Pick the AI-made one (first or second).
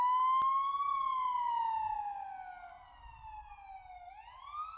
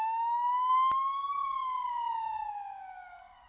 second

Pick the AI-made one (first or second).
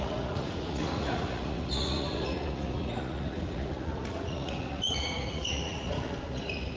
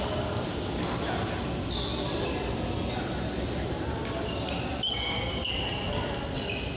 first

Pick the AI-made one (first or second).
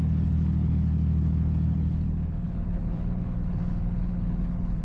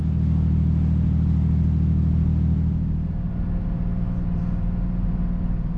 first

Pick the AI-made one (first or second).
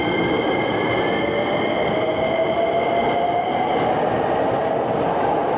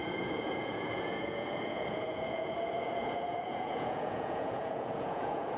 second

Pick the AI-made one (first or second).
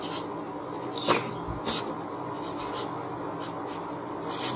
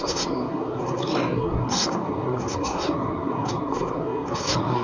second